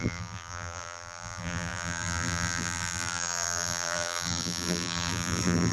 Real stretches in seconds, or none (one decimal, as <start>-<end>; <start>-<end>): none